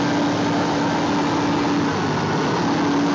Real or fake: real